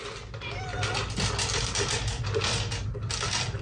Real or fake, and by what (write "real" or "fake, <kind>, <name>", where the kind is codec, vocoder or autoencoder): real